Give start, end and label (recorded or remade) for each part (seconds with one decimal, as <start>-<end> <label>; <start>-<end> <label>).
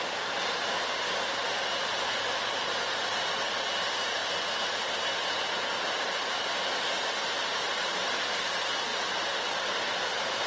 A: 0.0-10.5 recorded